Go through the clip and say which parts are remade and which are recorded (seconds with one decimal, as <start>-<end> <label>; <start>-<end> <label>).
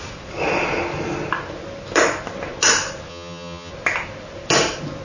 0.0-3.1 recorded; 3.1-3.7 remade; 3.7-5.0 recorded